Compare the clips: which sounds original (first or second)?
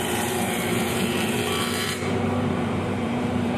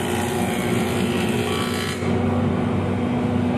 second